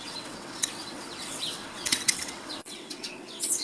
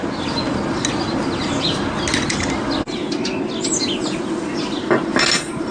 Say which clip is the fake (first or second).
first